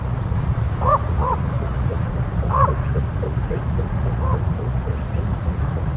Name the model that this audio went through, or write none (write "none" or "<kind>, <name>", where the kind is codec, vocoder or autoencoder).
vocoder, Vocos